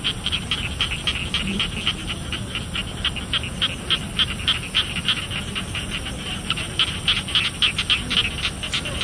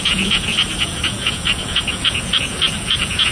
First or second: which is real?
first